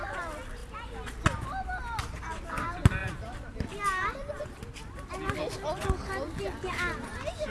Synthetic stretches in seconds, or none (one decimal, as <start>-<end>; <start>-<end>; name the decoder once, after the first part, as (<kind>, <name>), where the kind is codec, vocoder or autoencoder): none